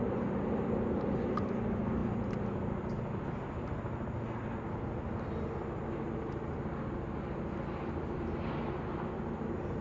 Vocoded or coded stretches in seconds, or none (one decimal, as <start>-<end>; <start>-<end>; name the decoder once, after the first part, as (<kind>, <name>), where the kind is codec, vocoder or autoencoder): none